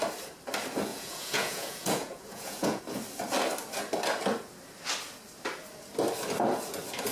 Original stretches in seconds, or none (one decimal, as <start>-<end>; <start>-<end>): 0.0-0.9; 2.8-7.1